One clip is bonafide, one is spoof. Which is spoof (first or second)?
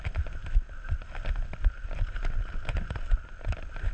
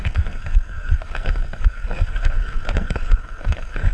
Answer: second